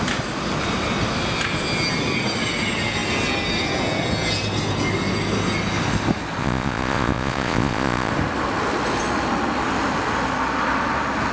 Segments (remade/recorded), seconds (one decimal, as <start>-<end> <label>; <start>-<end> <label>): 0.0-6.4 recorded; 6.4-8.1 remade; 8.1-11.3 recorded